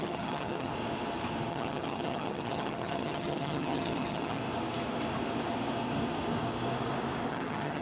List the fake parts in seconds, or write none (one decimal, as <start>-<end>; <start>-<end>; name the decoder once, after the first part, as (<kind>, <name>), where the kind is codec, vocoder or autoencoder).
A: 0.0-0.7 (vocoder, HiFi-GAN); 1.5-4.4; 7.3-7.8